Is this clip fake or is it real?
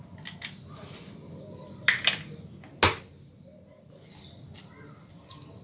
real